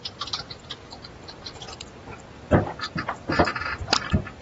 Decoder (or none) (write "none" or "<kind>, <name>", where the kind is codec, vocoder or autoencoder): none